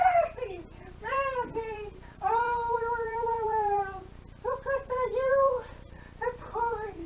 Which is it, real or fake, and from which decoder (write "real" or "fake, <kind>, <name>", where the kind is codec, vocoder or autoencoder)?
fake, vocoder, BigVGAN v2